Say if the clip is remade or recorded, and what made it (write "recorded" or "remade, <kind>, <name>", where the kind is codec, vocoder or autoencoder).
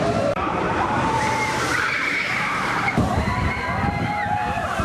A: remade, vocoder, BigVGAN v2